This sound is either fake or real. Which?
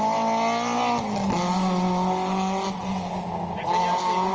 real